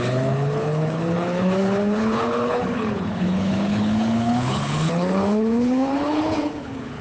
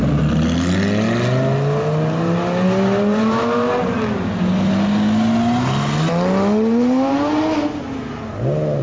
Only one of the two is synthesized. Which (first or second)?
first